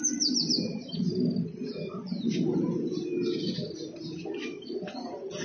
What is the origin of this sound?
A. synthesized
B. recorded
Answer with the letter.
B